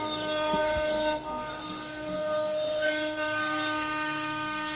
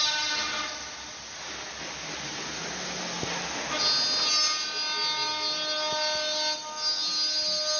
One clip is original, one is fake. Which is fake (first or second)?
first